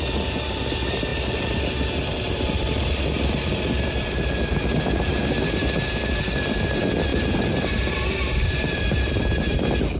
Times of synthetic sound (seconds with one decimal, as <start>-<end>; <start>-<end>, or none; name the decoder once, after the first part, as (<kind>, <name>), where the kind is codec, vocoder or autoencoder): 7.1-8.9 (vocoder, BigVGAN v2)

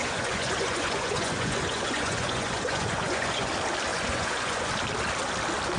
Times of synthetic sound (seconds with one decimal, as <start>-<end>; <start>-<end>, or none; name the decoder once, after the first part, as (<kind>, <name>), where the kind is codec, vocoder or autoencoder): 0.0-3.5 (vocoder, Vocos); 3.9-4.7

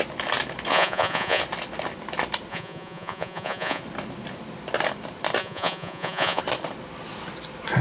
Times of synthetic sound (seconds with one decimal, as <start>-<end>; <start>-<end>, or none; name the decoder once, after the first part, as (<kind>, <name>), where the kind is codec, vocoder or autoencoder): 0.7-1.4 (vocoder, Vocos); 2.5-3.8; 5.4-6.4

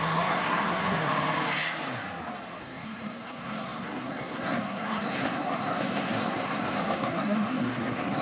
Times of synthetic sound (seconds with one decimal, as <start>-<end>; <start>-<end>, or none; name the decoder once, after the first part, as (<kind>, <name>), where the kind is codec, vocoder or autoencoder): 0.0-1.1 (codec, SNAC); 2.6-8.2